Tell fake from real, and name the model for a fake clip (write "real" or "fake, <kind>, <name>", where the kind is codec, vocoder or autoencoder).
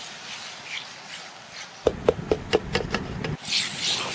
real